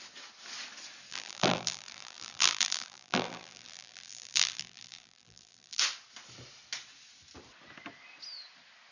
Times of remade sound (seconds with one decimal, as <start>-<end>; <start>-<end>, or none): 1.1-5.8